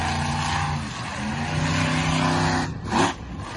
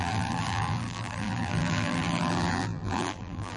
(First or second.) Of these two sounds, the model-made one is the second